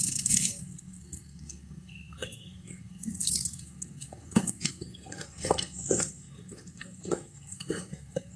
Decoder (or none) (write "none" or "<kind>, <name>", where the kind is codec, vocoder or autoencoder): codec, SNAC